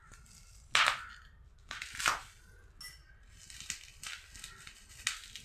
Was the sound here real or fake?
real